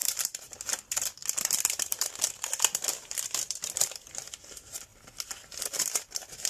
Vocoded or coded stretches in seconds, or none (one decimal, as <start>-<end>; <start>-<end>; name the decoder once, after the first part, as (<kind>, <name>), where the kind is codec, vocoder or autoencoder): 0.0-0.6 (vocoder, BigVGAN v2); 1.2-4.5